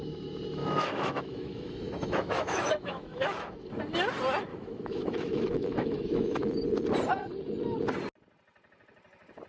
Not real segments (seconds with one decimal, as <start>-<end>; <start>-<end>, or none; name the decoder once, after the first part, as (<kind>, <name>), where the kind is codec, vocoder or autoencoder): 0.6-3.8 (autoencoder, DAC-VAE); 4.5-6.5